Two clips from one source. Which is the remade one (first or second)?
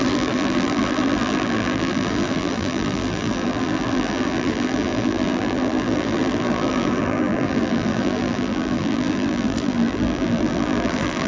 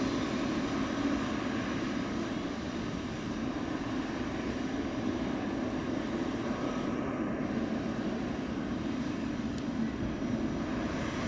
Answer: first